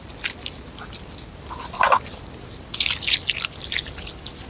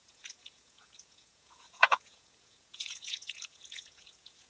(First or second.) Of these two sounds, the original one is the first